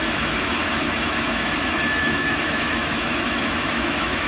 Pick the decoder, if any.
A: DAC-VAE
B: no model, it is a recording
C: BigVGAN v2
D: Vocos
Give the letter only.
A